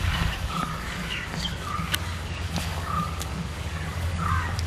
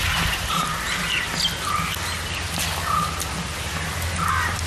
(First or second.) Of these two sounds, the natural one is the second